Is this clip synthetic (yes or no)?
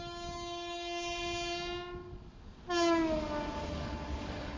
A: no